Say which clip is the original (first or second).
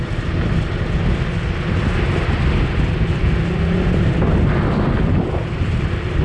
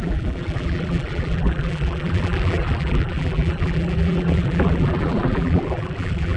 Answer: first